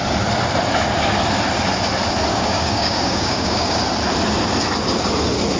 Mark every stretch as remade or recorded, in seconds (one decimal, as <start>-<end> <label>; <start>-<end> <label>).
0.0-2.3 recorded; 2.3-3.8 remade; 3.8-5.6 recorded